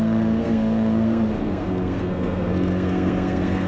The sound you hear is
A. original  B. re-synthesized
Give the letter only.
B